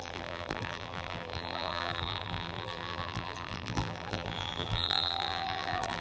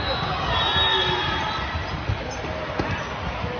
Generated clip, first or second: first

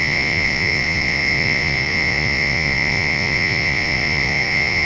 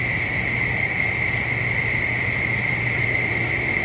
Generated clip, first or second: first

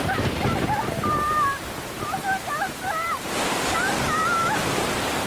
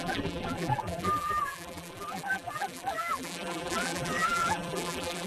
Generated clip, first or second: second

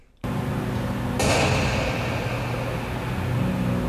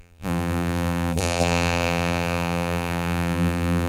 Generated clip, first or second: second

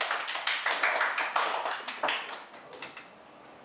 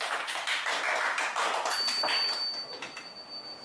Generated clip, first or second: second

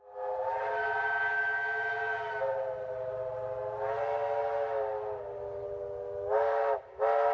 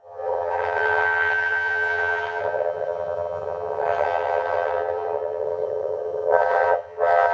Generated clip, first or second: second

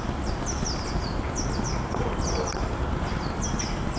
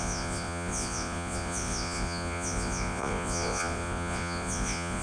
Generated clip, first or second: second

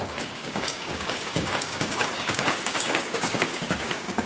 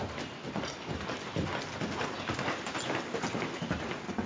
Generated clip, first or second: first